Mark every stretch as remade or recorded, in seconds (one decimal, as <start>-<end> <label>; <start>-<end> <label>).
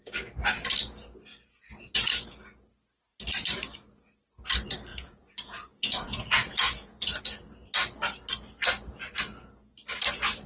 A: 0.0-4.9 recorded; 4.9-7.2 remade; 7.2-10.5 recorded